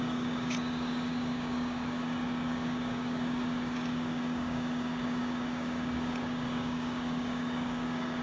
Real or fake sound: fake